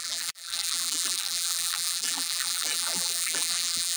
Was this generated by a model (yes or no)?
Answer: yes